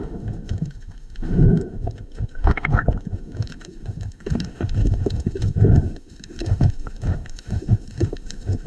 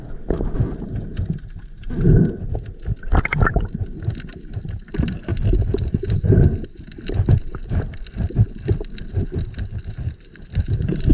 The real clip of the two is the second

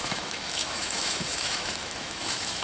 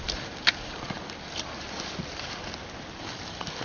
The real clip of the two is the second